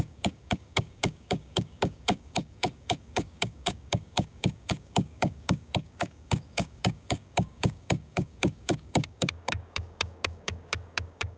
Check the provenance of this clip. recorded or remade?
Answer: remade